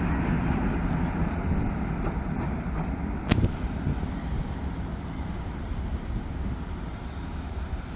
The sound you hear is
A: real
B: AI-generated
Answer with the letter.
A